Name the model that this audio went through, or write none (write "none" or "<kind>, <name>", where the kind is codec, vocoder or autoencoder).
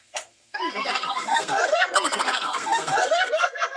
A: codec, SNAC